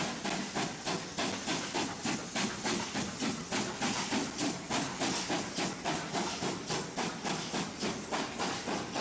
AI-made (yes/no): no